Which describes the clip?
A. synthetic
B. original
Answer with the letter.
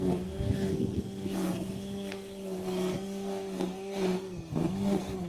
A